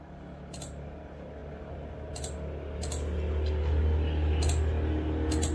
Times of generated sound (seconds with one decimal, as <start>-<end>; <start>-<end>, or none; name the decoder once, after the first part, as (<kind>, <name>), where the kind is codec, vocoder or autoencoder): none